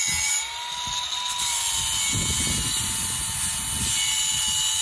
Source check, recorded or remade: recorded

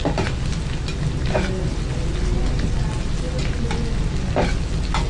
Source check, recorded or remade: recorded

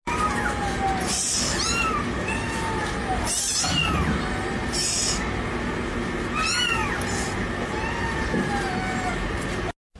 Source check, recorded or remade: recorded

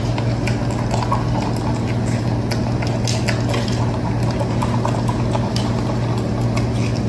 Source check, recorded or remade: recorded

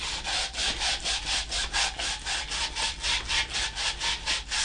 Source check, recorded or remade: recorded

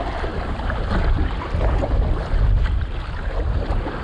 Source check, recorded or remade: recorded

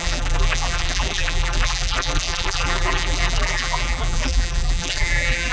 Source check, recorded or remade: remade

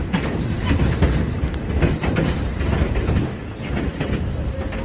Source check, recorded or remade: recorded